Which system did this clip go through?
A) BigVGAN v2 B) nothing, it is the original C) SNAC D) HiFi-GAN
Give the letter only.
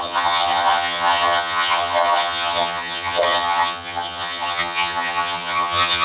D